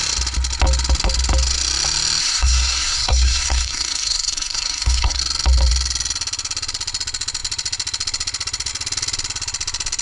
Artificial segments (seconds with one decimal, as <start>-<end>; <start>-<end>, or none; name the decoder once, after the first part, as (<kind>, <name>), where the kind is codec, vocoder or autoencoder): 2.2-5.2 (codec, SNAC)